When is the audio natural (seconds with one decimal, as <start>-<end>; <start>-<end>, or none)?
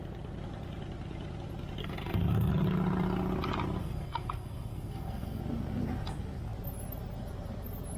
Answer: 0.0-1.8; 2.5-3.8; 5.4-8.0